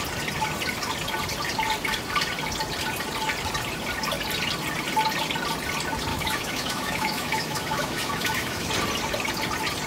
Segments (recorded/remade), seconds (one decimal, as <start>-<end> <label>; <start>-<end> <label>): 0.0-6.1 recorded; 6.1-8.7 remade; 8.7-9.9 recorded